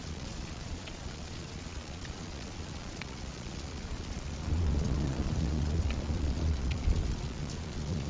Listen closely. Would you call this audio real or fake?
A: fake